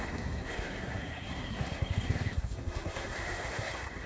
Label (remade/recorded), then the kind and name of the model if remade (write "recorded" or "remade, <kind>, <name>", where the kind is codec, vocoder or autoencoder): remade, codec, SNAC